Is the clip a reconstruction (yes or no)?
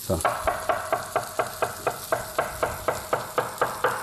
no